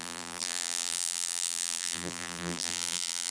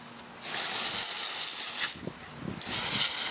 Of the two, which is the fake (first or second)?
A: first